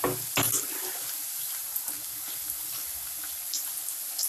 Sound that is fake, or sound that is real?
real